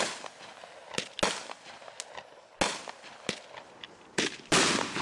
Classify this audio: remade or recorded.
recorded